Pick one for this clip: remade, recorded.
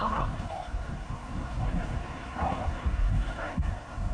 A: remade